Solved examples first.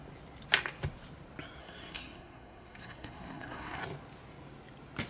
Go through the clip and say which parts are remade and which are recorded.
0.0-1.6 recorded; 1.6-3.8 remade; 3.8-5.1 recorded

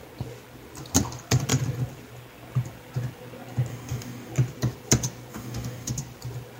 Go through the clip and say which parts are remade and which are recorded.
0.0-3.7 recorded; 3.7-4.3 remade; 4.3-5.3 recorded; 5.3-5.9 remade; 5.9-6.6 recorded

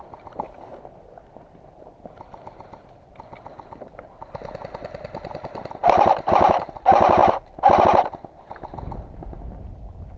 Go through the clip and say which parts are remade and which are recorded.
0.0-10.2 recorded

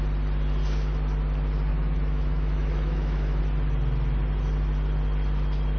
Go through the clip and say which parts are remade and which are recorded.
0.0-1.7 recorded; 1.7-3.4 remade; 3.4-5.8 recorded

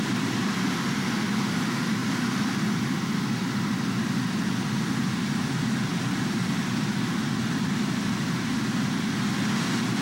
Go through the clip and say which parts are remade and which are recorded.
0.0-10.0 recorded

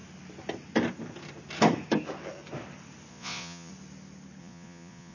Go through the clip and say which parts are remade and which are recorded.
0.0-3.1 recorded; 3.1-3.7 remade; 3.7-4.4 recorded; 4.4-5.1 remade